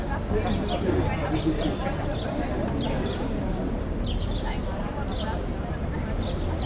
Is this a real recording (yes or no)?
yes